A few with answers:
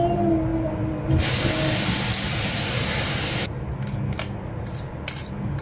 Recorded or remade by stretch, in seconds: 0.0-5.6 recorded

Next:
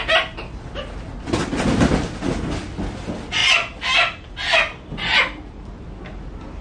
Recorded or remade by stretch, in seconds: 0.0-6.6 recorded

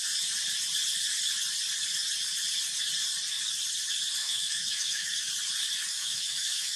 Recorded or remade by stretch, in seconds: 0.0-4.2 recorded; 4.2-5.3 remade; 5.3-5.9 recorded; 5.9-6.8 remade

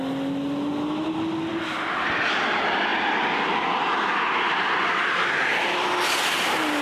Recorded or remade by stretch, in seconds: 0.0-6.8 recorded